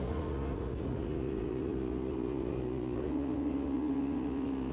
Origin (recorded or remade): remade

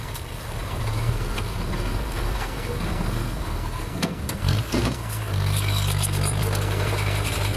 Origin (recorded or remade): remade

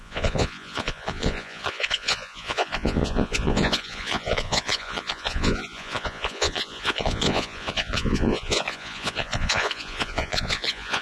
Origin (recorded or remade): remade